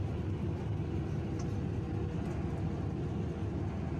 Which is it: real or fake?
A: real